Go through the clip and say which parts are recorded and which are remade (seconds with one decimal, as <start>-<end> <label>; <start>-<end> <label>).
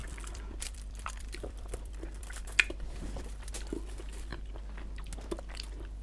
0.0-3.5 remade; 3.5-6.0 recorded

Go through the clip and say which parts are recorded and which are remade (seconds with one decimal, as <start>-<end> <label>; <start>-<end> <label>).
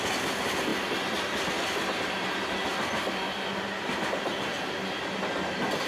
0.0-5.9 recorded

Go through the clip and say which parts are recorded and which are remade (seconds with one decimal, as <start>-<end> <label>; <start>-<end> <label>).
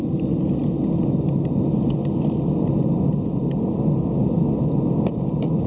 0.0-5.7 recorded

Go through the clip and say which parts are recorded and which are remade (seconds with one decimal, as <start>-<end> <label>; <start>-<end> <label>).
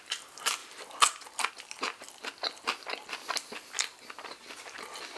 0.0-5.2 recorded